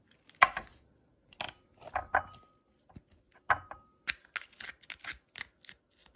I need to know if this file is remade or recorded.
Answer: recorded